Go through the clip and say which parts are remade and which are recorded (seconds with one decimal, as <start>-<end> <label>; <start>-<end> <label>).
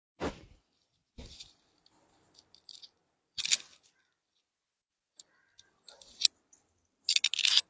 0.0-7.7 recorded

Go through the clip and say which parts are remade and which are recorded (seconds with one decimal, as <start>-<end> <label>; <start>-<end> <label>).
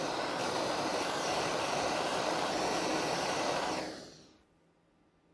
0.0-0.4 recorded; 0.4-2.5 remade; 2.5-2.9 recorded; 2.9-3.8 remade; 3.8-5.3 recorded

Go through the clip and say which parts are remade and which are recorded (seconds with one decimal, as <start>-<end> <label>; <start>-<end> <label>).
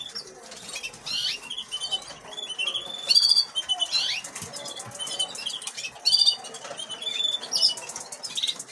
0.0-8.7 recorded